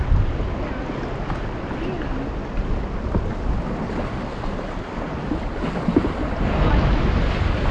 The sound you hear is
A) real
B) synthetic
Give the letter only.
A